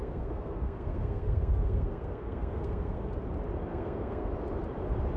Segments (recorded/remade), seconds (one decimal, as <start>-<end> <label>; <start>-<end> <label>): 0.0-3.1 remade; 3.1-3.7 recorded; 3.7-4.3 remade; 4.3-5.2 recorded